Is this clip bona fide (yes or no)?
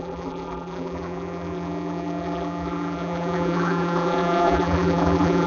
no